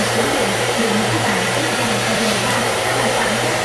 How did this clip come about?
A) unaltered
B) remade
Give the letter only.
B